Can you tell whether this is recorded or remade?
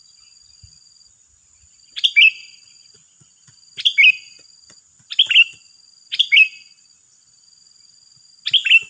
recorded